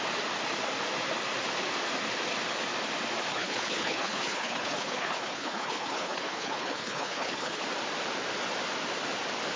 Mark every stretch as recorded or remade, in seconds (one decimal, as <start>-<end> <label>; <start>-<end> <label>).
0.0-3.3 recorded; 3.3-7.6 remade; 7.6-9.6 recorded